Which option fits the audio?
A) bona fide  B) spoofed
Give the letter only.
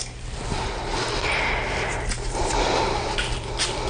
A